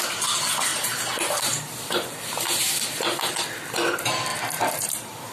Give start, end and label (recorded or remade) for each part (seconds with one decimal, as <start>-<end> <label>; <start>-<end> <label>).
0.0-0.7 recorded; 0.7-3.3 remade; 3.3-4.3 recorded; 4.3-5.3 remade

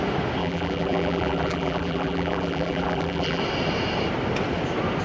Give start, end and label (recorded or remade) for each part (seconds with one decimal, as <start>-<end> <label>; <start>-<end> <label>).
0.0-0.4 recorded; 0.4-3.4 remade; 3.4-5.0 recorded

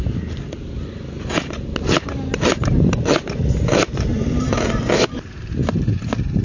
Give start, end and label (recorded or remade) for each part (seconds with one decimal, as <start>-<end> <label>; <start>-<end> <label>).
0.0-4.1 recorded; 4.1-5.4 remade; 5.4-6.4 recorded

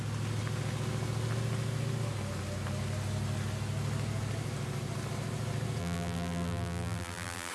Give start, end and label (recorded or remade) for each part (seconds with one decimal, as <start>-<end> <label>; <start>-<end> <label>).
0.0-5.8 recorded; 5.8-7.5 remade

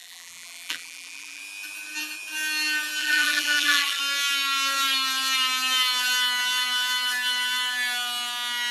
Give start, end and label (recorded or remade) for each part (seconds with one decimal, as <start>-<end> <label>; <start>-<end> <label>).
0.0-1.4 remade; 1.4-3.0 recorded; 3.0-4.0 remade; 4.0-8.7 recorded

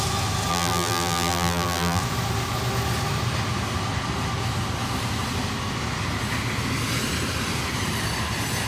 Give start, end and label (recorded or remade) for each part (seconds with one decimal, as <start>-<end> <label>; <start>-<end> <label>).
0.0-0.5 recorded; 0.5-2.0 remade; 2.0-8.7 recorded